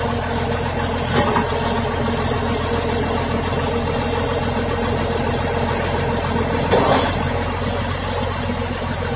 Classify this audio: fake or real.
real